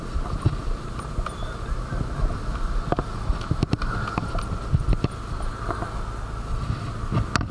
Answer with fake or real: real